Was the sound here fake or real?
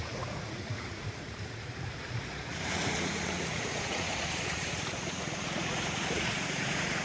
fake